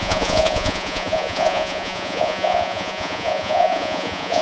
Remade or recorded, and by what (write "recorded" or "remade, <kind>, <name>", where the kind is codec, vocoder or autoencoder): remade, vocoder, Vocos